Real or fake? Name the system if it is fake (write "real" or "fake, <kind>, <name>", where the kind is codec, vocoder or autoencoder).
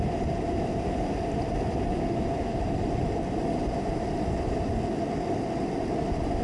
real